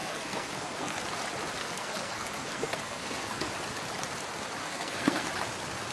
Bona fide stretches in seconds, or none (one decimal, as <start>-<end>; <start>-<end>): 1.0-1.6; 3.5-4.6; 5.3-5.9